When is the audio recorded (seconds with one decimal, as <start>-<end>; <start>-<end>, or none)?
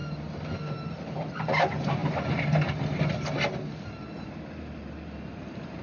0.0-0.9; 2.0-4.2